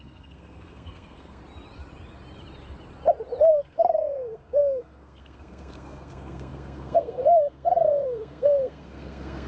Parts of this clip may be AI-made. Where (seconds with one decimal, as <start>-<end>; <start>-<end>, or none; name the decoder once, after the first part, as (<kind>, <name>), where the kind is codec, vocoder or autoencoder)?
0.0-1.4 (codec, SNAC); 3.5-9.5